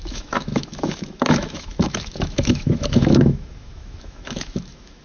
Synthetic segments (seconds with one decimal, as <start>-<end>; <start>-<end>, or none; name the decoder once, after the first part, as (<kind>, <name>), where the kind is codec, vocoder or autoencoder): 0.0-5.0 (autoencoder, DAC-VAE)